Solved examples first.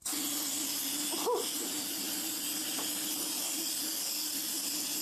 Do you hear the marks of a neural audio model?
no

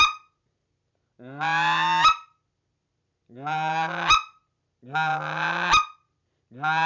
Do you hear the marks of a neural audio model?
no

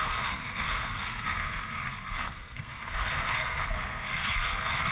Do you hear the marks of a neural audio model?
yes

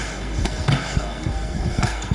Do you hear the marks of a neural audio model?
yes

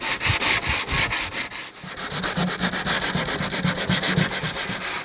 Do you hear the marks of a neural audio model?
no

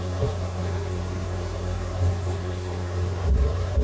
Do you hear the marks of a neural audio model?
yes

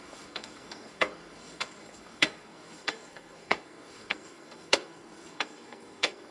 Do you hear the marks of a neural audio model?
yes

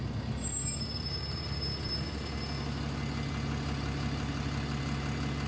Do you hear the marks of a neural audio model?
no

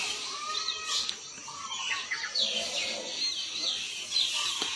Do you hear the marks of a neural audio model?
no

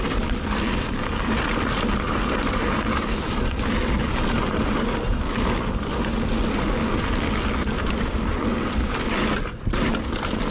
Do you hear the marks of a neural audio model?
no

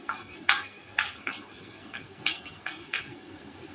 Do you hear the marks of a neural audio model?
yes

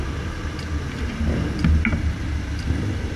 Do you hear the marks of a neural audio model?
no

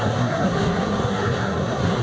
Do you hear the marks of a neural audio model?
yes